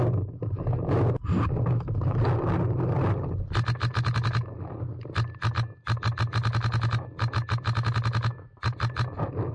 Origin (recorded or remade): recorded